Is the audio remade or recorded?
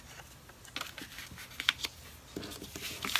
recorded